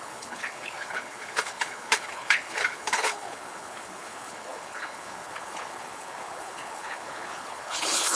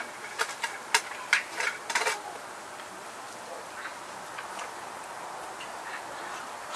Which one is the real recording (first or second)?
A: second